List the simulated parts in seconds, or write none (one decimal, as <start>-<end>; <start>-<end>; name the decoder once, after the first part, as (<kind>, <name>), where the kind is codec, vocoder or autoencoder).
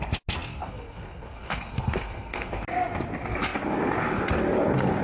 0.6-2.5 (codec, SNAC)